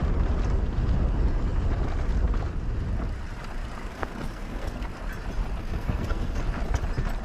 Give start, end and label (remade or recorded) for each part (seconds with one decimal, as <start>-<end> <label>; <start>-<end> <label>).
0.0-3.9 recorded; 3.9-4.9 remade; 4.9-5.6 recorded; 5.6-6.4 remade; 6.4-7.2 recorded